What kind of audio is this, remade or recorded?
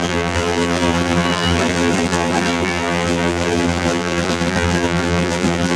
remade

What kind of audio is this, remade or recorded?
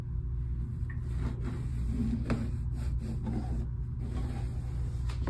recorded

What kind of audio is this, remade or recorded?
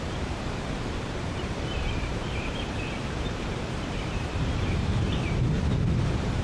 remade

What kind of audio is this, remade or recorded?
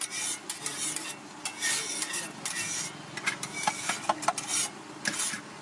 recorded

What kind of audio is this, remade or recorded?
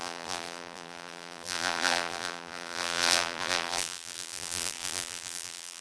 remade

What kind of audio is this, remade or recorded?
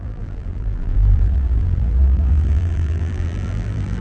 remade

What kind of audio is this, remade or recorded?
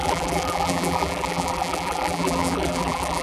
remade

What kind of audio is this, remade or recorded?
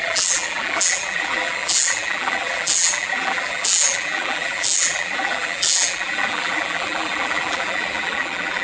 remade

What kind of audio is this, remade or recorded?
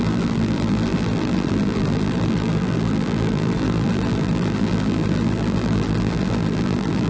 remade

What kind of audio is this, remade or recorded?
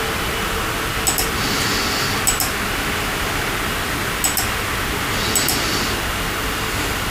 recorded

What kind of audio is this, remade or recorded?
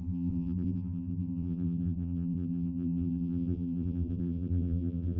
remade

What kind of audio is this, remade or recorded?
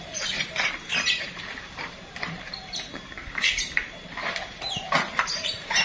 remade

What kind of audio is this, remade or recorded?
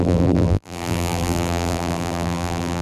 remade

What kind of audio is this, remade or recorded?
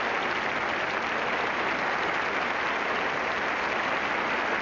recorded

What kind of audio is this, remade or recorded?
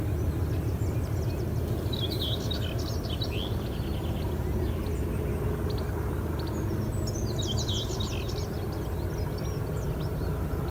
recorded